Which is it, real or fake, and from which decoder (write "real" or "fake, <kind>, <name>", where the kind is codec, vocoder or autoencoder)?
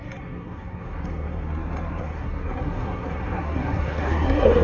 fake, codec, SNAC